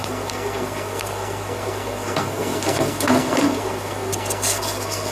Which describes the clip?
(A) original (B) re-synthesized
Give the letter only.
B